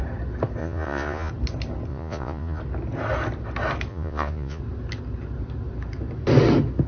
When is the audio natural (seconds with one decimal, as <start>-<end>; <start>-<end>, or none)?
0.0-0.6; 1.3-1.9; 2.6-3.9; 4.6-6.9